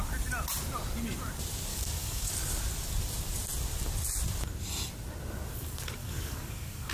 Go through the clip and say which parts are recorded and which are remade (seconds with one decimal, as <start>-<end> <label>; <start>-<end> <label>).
0.0-1.7 recorded; 1.7-2.3 remade; 2.3-6.0 recorded; 6.0-6.9 remade